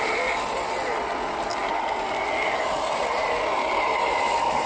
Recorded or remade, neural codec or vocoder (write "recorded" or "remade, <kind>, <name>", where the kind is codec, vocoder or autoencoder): recorded